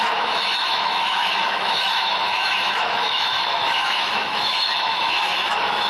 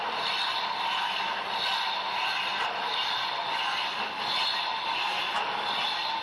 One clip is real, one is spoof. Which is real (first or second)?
second